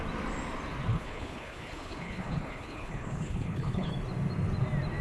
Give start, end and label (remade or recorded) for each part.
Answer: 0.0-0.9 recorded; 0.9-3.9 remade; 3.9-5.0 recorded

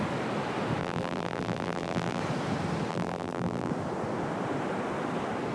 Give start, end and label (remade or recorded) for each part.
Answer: 0.0-0.8 recorded; 0.8-2.2 remade; 2.2-2.9 recorded; 2.9-3.7 remade; 3.7-5.5 recorded